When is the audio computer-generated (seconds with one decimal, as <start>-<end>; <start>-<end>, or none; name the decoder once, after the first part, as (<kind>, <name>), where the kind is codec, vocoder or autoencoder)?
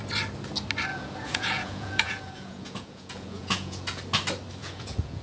0.9-4.0 (vocoder, Vocos); 4.6-5.2